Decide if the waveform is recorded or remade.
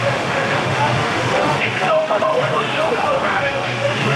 remade